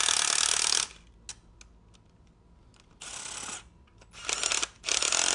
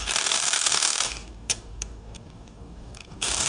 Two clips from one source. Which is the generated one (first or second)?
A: second